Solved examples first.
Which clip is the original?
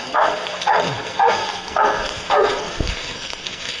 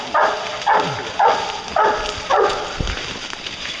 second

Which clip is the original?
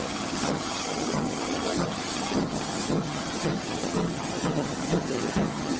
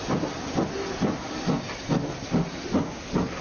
second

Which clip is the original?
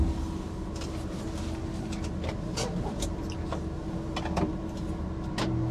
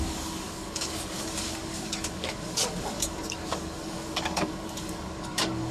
first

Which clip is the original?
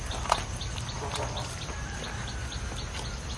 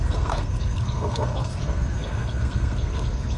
first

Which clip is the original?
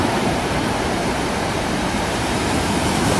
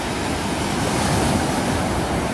second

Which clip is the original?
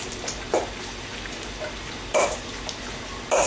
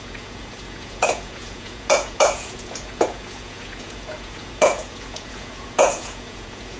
first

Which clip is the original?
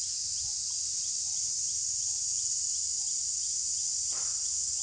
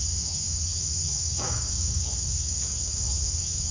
first